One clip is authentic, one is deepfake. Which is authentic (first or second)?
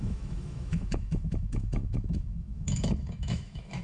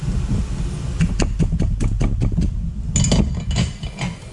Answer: second